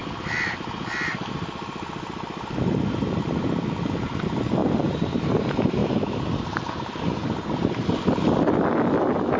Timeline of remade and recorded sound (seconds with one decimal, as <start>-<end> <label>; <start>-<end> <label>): 0.0-9.4 recorded